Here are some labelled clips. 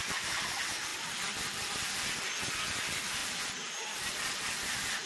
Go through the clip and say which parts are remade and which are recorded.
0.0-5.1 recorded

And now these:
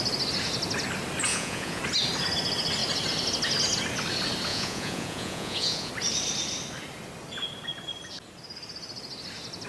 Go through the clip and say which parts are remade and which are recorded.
0.0-1.3 recorded; 1.3-1.8 remade; 1.8-4.5 recorded; 4.5-5.9 remade; 5.9-9.7 recorded

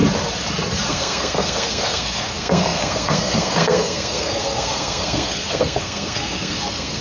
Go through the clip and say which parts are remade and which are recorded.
0.0-0.9 recorded; 0.9-7.0 remade

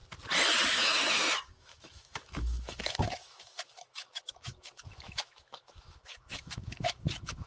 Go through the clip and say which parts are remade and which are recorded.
0.0-0.7 recorded; 0.7-7.5 remade

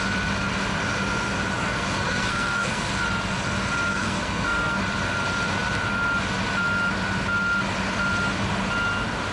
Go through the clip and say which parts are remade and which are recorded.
0.0-1.6 recorded; 1.6-2.9 remade; 2.9-3.9 recorded; 3.9-4.8 remade; 4.8-9.3 recorded

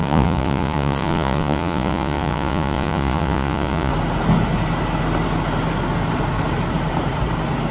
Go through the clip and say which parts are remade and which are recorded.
0.0-3.9 remade; 3.9-7.7 recorded

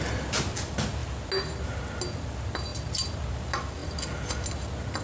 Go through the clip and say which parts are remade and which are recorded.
0.0-5.0 recorded

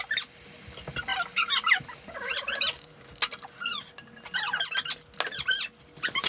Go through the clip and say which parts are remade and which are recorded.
0.0-6.3 recorded